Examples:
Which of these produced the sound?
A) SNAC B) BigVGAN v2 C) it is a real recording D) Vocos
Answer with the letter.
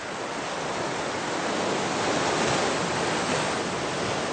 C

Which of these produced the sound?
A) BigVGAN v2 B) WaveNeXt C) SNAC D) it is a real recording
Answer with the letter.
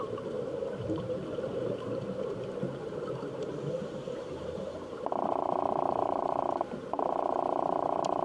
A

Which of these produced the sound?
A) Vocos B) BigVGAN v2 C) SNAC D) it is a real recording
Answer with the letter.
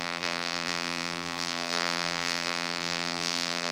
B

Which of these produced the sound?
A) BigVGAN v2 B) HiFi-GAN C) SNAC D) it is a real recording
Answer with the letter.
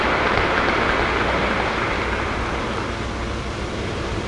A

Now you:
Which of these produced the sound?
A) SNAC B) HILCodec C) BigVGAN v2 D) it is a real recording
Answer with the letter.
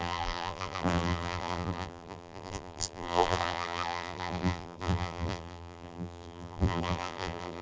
C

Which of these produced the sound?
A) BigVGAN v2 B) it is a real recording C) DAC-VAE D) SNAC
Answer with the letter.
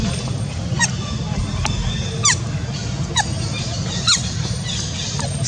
B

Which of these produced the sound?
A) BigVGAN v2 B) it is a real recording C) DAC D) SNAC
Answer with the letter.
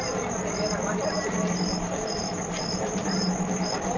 A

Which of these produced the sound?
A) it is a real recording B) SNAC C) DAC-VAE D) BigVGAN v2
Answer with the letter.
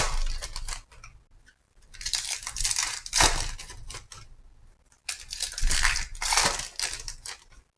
A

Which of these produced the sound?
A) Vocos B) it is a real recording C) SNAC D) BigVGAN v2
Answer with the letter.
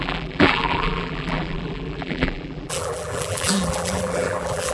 D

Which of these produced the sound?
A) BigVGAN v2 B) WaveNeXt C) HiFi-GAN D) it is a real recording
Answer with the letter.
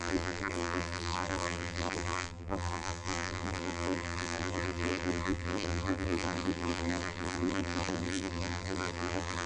A